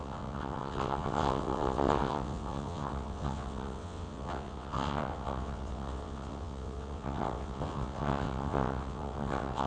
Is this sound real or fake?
fake